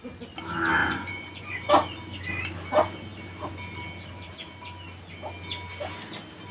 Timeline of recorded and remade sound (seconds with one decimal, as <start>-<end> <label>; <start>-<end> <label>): 0.0-0.8 recorded; 0.8-1.7 remade; 1.7-6.5 recorded